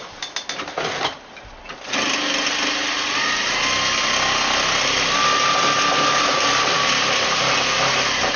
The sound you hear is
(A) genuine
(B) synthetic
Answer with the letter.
A